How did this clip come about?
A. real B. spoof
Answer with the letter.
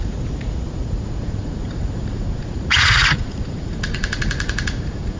B